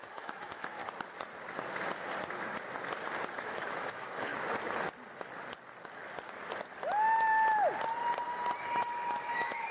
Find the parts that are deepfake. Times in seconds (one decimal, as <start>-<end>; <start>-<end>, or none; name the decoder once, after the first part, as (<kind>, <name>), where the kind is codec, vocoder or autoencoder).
0.0-0.8 (autoencoder, DAC-VAE); 3.4-4.3; 8.6-9.7